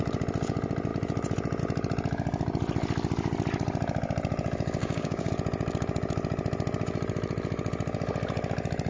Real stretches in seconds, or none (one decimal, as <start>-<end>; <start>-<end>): 0.0-4.8; 5.3-8.9